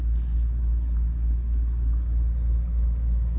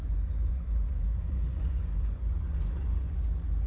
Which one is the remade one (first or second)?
second